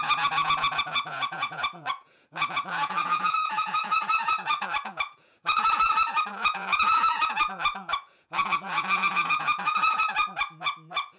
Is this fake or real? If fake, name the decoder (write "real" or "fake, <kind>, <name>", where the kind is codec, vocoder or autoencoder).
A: fake, vocoder, Vocos